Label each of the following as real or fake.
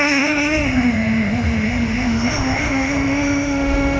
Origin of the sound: fake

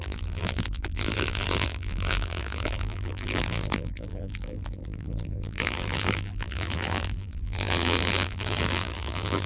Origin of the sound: fake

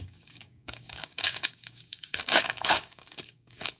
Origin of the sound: fake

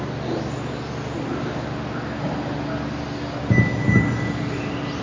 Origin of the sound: real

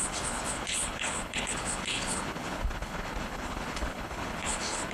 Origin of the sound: fake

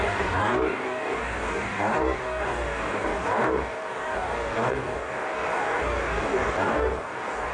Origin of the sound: fake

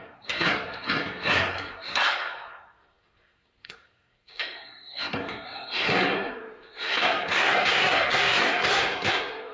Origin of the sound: fake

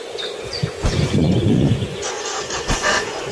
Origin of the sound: fake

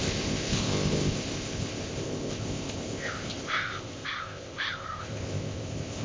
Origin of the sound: fake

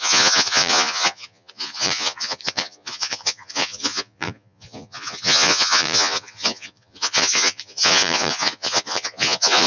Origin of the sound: fake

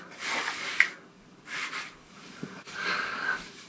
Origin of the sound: fake